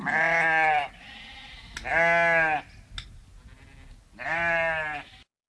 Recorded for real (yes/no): yes